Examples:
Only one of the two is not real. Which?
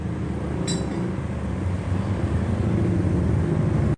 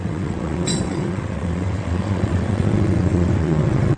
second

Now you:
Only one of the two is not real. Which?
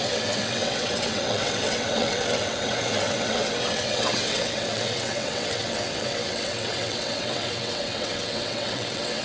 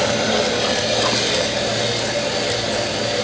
first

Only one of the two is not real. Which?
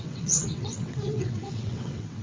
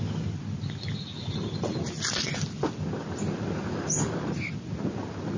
first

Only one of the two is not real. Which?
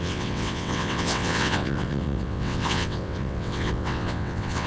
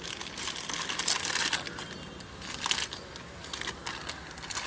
first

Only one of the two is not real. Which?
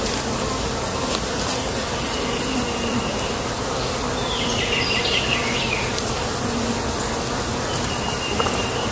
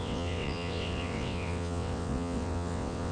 second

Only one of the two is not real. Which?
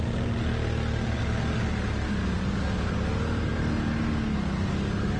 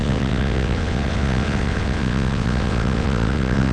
second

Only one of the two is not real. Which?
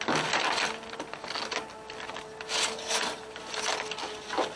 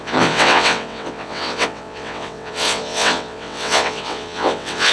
second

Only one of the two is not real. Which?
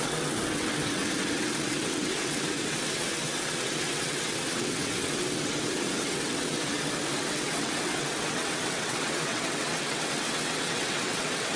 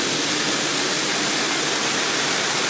first